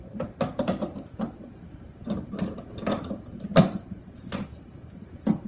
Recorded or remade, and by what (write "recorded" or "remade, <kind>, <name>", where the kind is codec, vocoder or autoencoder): remade, vocoder, BigVGAN v2